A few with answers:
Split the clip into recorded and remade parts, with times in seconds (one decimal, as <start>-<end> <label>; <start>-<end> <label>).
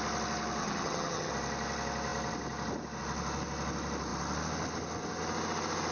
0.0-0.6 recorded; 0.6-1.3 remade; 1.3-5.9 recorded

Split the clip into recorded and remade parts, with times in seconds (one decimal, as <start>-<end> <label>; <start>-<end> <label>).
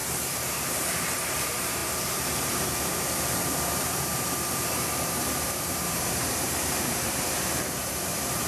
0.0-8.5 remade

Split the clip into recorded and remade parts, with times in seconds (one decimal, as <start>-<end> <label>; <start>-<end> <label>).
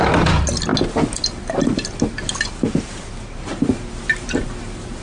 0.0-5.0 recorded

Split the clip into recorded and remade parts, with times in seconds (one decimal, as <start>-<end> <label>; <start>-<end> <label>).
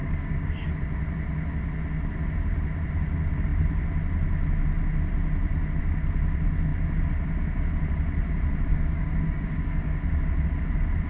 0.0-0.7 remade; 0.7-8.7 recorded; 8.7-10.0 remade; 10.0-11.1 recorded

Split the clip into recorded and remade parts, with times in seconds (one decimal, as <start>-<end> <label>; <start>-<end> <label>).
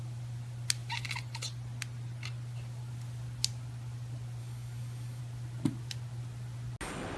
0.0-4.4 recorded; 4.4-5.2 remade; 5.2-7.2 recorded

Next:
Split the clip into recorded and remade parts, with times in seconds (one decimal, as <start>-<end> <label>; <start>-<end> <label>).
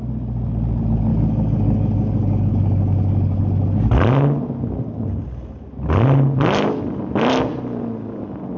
0.0-1.1 recorded; 1.1-3.4 remade; 3.4-8.6 recorded